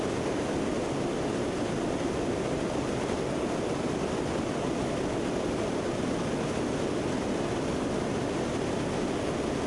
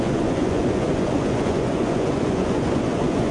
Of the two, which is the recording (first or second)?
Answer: first